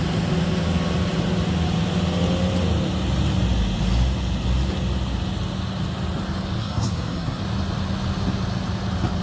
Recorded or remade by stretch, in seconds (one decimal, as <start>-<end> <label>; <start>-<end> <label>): 0.0-6.6 recorded; 6.6-7.4 remade; 7.4-9.2 recorded